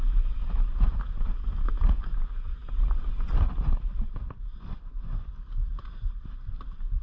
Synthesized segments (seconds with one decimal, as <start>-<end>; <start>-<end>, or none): none